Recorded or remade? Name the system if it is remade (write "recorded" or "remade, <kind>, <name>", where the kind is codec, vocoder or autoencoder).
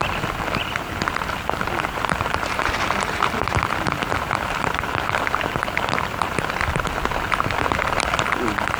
remade, vocoder, BigVGAN v2